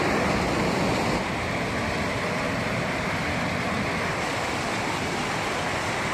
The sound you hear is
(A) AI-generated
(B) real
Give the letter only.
B